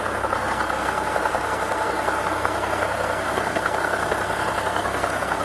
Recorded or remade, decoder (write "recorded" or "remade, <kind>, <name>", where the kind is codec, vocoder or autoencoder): remade, codec, SNAC